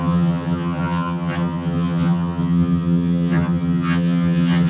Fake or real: fake